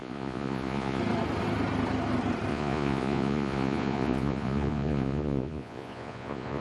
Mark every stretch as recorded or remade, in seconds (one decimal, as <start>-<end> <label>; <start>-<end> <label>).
0.0-1.0 remade; 1.0-2.5 recorded; 2.5-6.6 remade